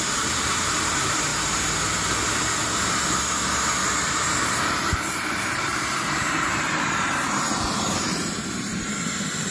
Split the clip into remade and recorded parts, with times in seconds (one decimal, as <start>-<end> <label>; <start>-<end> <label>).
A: 0.0-1.3 remade; 1.3-4.4 recorded; 4.4-9.5 remade